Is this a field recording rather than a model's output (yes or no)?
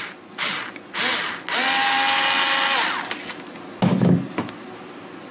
yes